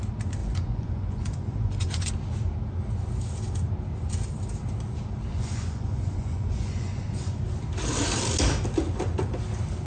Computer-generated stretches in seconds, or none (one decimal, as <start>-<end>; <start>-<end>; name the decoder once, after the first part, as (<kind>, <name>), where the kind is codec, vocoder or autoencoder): 0.4-2.1 (vocoder, Vocos); 5.3-7.4